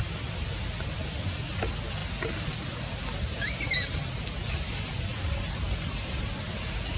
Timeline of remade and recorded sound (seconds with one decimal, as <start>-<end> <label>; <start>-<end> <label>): 0.0-7.0 recorded